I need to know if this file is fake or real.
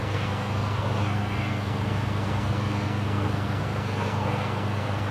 fake